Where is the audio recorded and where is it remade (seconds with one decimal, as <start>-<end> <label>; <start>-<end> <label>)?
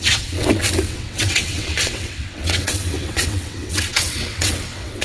0.0-5.0 remade